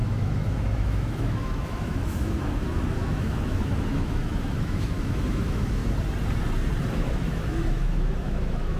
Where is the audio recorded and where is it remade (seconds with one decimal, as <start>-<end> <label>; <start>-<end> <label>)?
0.0-5.8 remade; 5.8-6.9 recorded; 6.9-8.8 remade